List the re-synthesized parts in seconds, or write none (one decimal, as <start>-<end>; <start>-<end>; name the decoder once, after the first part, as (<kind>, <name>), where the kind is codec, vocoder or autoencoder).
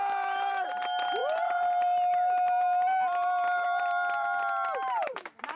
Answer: none